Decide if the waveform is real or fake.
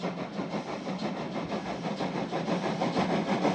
real